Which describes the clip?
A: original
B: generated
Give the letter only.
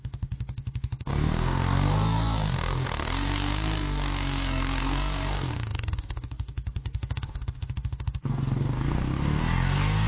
B